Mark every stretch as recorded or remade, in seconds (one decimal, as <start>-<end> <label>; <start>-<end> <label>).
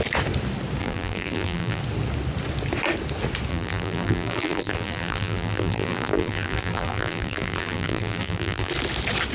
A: 0.0-0.8 recorded; 0.8-1.8 remade; 1.8-3.5 recorded; 3.5-8.7 remade; 8.7-9.3 recorded